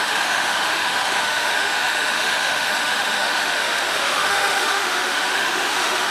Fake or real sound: fake